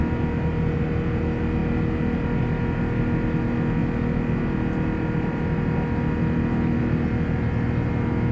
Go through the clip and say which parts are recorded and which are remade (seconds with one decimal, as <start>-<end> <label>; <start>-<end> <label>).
0.0-8.3 recorded